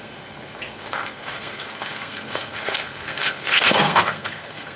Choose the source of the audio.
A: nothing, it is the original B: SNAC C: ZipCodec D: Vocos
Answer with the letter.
B